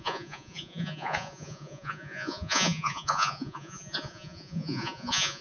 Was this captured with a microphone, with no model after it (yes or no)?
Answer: no